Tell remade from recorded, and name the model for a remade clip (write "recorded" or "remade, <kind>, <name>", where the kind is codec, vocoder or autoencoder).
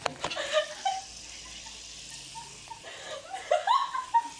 recorded